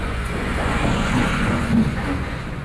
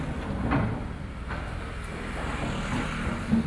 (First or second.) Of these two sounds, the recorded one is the second